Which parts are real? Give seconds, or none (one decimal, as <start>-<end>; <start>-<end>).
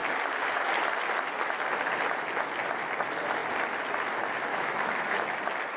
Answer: 0.0-4.5; 5.3-5.8